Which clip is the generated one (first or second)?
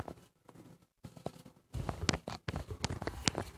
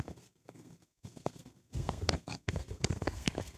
second